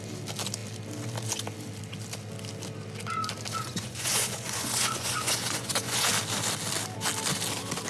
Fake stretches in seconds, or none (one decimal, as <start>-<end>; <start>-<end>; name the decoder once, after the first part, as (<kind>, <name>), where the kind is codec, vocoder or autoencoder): 3.6-6.1 (vocoder, Vocos)